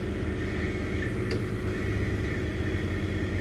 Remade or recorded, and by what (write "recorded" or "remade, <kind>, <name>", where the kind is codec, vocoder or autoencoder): recorded